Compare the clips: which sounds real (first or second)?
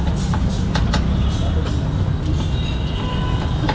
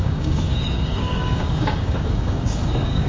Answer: first